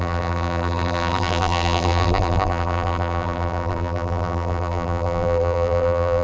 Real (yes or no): no